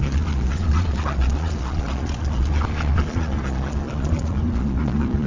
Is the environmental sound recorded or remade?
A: remade